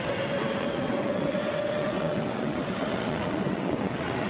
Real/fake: fake